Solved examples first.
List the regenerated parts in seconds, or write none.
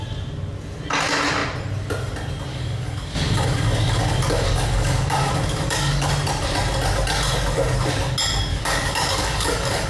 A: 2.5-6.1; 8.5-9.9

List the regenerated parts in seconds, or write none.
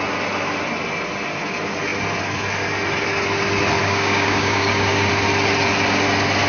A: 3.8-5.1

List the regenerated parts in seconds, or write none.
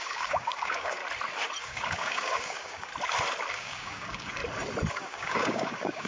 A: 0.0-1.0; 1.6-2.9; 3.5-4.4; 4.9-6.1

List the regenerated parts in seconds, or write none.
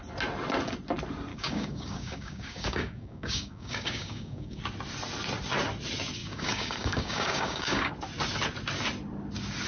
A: 1.3-4.6; 6.2-7.9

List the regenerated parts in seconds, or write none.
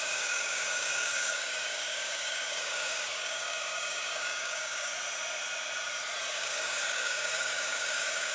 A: 0.0-4.9; 6.3-8.3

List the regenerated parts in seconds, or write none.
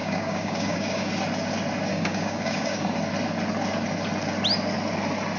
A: 0.0-1.1; 1.9-3.0